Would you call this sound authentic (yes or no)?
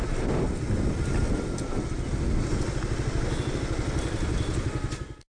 yes